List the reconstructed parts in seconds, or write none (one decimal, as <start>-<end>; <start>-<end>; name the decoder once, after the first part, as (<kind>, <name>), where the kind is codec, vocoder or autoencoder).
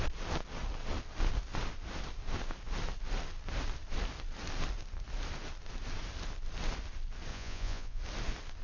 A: 7.3-8.0 (vocoder, Vocos)